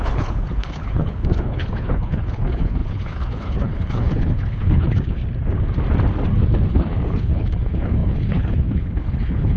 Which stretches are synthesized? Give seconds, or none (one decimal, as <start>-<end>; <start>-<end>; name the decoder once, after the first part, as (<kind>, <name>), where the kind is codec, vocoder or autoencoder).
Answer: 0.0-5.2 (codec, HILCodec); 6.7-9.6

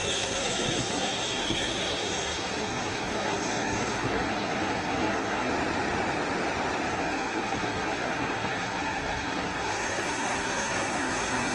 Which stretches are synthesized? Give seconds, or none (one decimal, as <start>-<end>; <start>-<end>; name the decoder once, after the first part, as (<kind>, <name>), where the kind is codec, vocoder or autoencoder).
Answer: 0.0-5.5 (codec, SNAC); 6.9-11.5

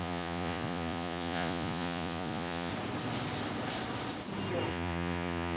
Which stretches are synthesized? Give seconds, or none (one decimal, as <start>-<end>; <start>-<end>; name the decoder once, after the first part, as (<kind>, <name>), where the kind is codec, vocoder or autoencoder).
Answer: 0.0-2.7 (vocoder, Vocos); 4.7-5.6